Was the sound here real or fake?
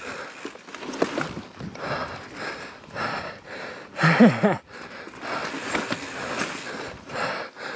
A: real